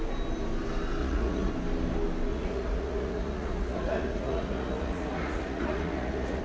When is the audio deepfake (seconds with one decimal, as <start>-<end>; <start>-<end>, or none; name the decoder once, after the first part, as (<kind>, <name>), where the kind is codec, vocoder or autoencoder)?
1.0-1.5 (vocoder, Vocos); 2.3-6.4

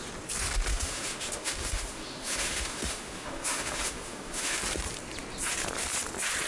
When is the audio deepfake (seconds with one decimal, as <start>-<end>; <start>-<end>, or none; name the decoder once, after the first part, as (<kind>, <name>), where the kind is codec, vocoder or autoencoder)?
0.7-4.6 (autoencoder, DAC-VAE)